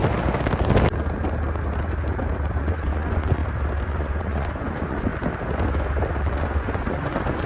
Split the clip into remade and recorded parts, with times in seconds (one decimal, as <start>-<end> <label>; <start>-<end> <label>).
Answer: 0.0-2.6 recorded; 2.6-3.4 remade; 3.4-3.9 recorded; 3.9-5.1 remade; 5.1-6.2 recorded; 6.2-7.5 remade